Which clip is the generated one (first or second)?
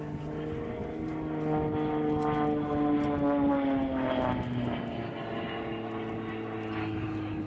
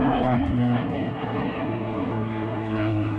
second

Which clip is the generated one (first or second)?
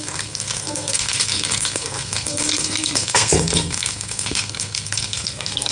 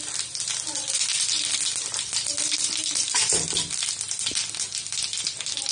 first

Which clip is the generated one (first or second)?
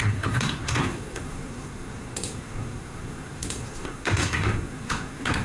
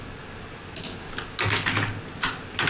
first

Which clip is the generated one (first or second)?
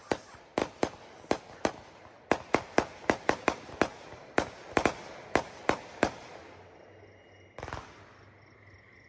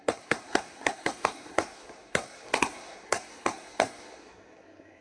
second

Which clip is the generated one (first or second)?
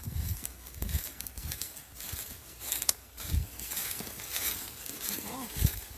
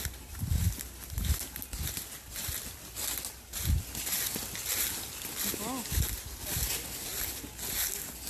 first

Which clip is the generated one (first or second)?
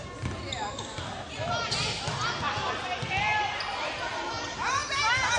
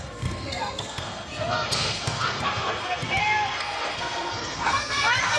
second